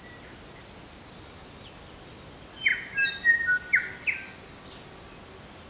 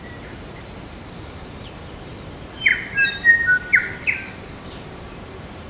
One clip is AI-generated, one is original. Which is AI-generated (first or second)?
second